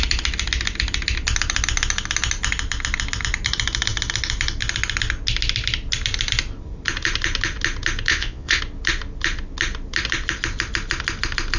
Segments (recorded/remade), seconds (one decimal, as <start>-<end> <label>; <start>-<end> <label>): 0.0-8.1 recorded; 8.1-8.6 remade; 8.6-11.6 recorded